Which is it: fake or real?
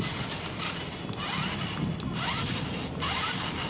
real